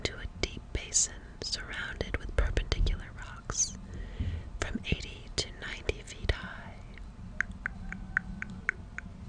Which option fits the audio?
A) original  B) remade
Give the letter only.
A